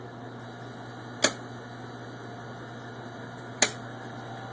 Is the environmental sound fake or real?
real